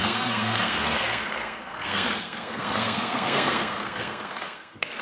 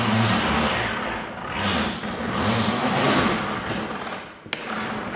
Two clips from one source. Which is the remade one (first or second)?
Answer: first